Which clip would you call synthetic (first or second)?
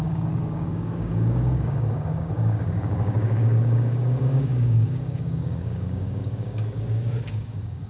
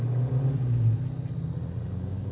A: first